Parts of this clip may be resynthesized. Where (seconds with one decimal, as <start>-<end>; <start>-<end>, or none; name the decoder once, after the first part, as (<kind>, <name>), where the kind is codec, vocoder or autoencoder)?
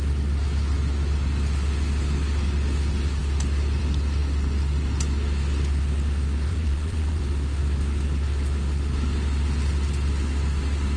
6.5-7.2 (vocoder, Vocos)